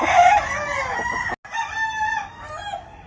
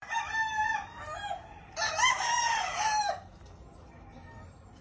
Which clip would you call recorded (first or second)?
first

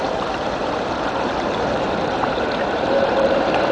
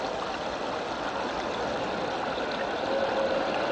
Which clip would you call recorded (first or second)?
second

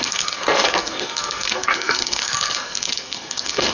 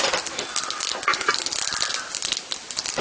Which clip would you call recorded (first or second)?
second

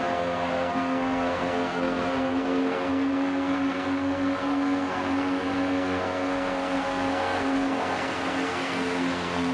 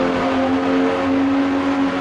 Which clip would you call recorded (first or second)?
second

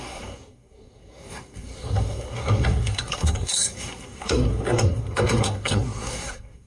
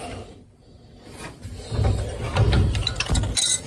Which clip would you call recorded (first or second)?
second